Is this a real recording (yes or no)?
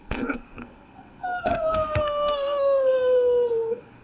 no